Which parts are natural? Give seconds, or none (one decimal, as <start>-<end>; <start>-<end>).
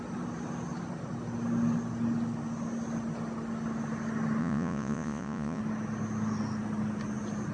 0.0-4.4; 5.6-7.5